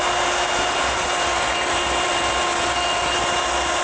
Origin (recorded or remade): recorded